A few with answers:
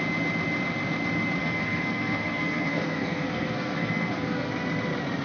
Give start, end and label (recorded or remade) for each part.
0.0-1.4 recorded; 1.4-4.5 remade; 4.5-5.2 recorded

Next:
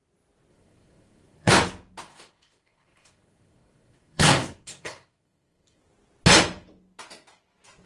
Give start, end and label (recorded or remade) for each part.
0.0-0.5 recorded; 0.5-1.5 remade; 1.5-2.1 recorded; 2.1-5.8 remade; 5.8-7.9 recorded

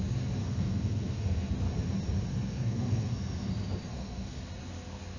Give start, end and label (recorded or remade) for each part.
0.0-0.4 recorded; 0.4-1.5 remade; 1.5-2.3 recorded; 2.3-3.5 remade; 3.5-3.9 recorded; 3.9-4.4 remade; 4.4-5.2 recorded

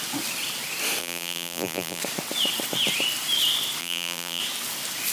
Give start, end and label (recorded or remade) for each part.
0.0-1.0 recorded; 1.0-2.0 remade; 2.0-3.8 recorded; 3.8-4.4 remade; 4.4-5.1 recorded